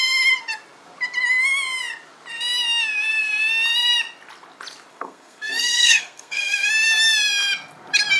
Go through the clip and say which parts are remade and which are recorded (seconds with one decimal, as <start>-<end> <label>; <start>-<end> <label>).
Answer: 0.0-4.9 recorded; 4.9-6.7 remade; 6.7-8.2 recorded